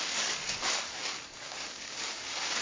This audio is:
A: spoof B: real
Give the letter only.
A